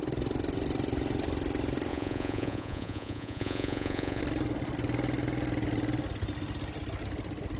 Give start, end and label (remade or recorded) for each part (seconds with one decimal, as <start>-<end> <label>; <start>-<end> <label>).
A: 0.0-1.9 recorded; 1.9-4.2 remade; 4.2-7.6 recorded